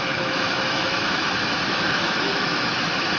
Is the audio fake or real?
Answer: fake